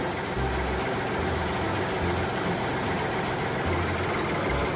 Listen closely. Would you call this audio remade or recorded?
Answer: recorded